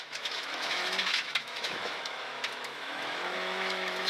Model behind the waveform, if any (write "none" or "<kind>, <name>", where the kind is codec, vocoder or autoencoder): autoencoder, DAC-VAE